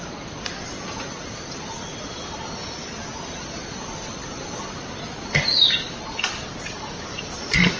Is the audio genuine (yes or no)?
yes